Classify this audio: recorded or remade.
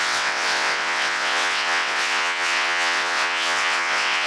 remade